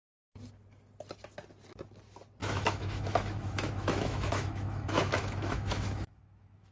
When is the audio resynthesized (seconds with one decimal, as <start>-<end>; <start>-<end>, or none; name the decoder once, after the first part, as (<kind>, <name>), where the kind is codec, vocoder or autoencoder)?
2.4-6.7 (autoencoder, DAC-VAE)